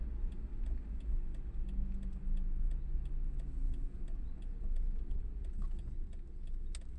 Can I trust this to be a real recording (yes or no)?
yes